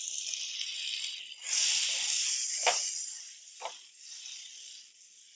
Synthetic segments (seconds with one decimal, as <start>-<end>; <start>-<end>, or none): none